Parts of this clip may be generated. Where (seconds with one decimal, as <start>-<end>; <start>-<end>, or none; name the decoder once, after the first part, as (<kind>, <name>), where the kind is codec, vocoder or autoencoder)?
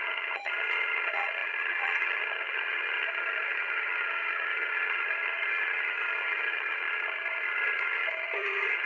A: 0.0-8.9 (vocoder, HiFi-GAN)